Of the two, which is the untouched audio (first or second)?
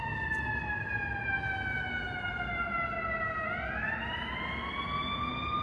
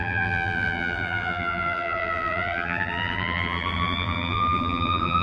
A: first